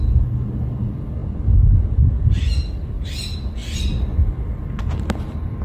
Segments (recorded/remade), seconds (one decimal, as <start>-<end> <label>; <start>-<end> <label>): 0.0-5.6 recorded